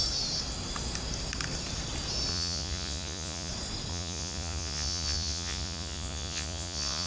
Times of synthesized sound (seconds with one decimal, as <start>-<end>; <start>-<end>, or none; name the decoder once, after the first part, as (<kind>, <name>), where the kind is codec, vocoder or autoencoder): 2.3-3.5 (vocoder, Vocos); 3.9-7.1